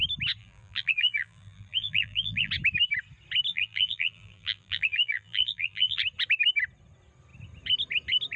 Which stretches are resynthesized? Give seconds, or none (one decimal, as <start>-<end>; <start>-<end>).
0.4-2.5; 3.5-6.0